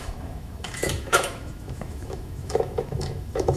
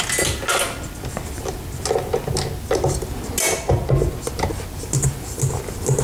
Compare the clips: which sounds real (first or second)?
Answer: second